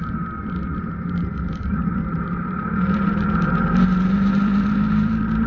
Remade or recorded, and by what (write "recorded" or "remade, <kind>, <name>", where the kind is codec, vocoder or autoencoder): remade, vocoder, BigVGAN v2